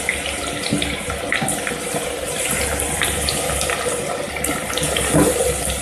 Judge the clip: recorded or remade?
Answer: recorded